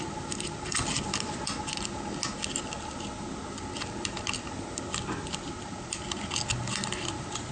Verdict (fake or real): real